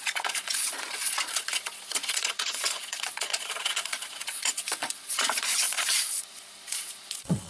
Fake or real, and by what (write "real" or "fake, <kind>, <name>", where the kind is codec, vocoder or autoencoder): fake, vocoder, Vocos